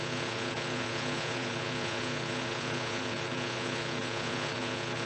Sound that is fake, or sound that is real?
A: fake